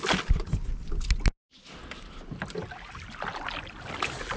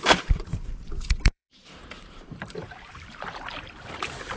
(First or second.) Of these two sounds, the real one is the first